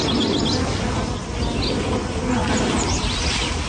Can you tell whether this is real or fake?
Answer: real